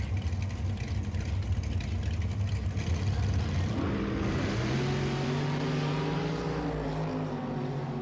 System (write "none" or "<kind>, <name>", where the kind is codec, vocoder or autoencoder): none